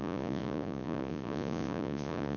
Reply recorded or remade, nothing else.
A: remade